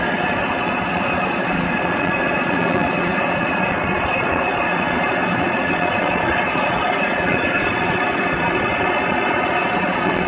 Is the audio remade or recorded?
remade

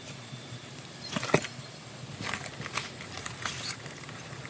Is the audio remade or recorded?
recorded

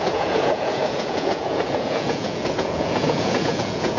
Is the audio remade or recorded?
remade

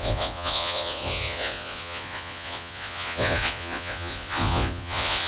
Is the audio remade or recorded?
remade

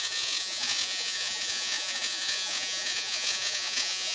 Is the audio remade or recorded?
remade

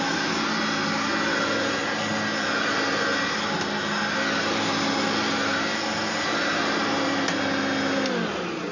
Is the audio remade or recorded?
recorded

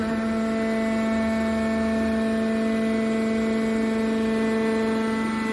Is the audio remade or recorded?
recorded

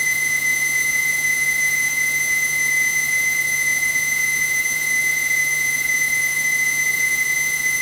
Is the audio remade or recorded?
remade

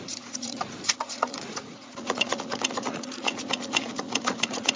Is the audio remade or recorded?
remade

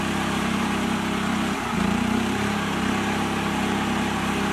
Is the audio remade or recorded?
recorded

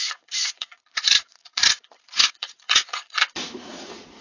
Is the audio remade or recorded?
remade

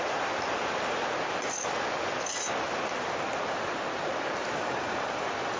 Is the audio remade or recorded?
recorded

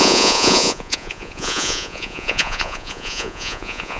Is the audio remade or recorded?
remade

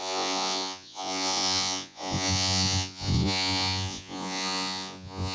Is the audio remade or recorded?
remade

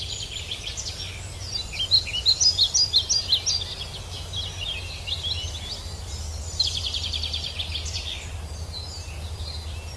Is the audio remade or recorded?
recorded